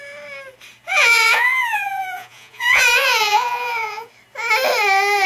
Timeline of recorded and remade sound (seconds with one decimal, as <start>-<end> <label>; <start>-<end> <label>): 0.0-0.9 recorded; 0.9-4.1 remade; 4.1-5.3 recorded